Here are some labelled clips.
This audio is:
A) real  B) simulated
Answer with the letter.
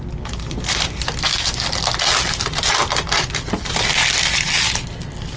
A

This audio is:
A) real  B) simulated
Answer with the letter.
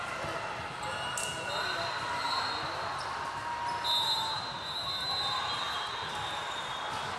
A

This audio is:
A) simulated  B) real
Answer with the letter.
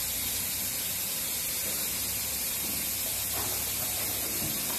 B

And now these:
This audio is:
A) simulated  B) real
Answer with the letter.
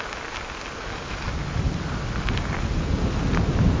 B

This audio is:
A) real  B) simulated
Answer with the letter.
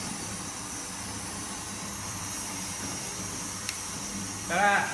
B